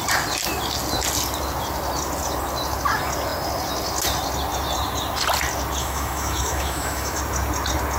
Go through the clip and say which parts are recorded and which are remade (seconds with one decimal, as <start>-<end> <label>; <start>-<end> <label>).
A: 0.0-5.8 recorded; 5.8-7.2 remade; 7.2-8.0 recorded